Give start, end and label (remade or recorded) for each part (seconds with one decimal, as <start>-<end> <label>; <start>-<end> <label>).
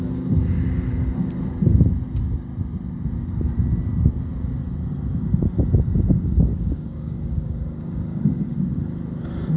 0.0-6.5 recorded; 6.5-8.8 remade; 8.8-9.6 recorded